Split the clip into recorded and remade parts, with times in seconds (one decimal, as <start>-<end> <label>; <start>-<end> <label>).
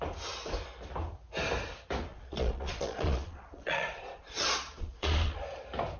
0.0-2.1 recorded; 2.1-5.4 remade; 5.4-6.0 recorded